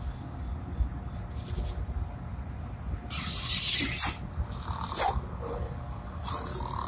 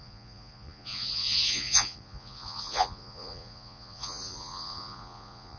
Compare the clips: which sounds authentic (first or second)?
first